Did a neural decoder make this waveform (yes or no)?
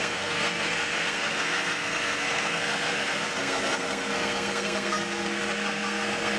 yes